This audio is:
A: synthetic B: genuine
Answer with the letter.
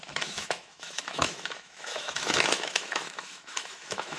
A